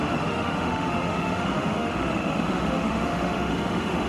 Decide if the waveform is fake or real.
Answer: fake